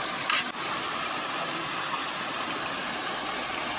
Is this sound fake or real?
real